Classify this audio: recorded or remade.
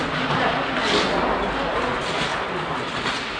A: recorded